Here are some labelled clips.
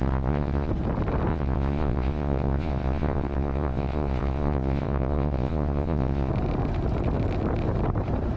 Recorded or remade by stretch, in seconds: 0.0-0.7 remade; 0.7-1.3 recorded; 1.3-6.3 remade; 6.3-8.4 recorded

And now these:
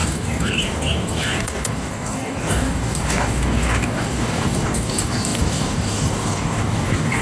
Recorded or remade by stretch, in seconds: 0.0-7.2 remade

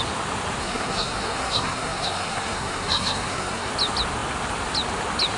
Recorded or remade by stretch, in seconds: 0.0-0.6 recorded; 0.6-3.7 remade; 3.7-5.4 recorded

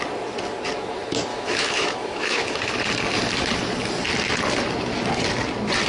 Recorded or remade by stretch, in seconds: 0.0-1.3 recorded; 1.3-2.7 remade; 2.7-5.9 recorded

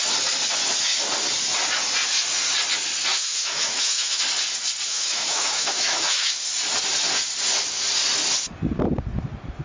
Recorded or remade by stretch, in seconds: 0.0-3.1 recorded; 3.1-4.2 remade; 4.2-4.9 recorded; 4.9-6.3 remade; 6.3-9.6 recorded